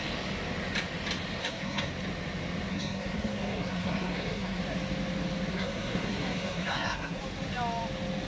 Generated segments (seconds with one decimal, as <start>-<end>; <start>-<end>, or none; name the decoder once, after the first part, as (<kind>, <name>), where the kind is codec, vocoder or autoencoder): 1.4-1.9 (codec, SNAC); 2.7-4.6; 5.5-7.2